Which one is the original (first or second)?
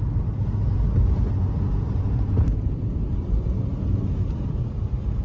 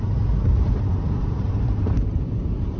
first